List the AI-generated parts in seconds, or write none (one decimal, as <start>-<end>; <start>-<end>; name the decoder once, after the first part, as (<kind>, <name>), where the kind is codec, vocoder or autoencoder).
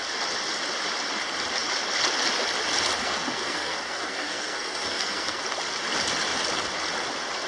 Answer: 3.0-5.4 (codec, SNAC)